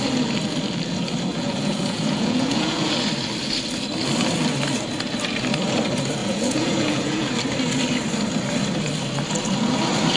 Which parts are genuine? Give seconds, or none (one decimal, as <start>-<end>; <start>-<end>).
0.0-1.3; 2.9-6.2; 7.3-10.2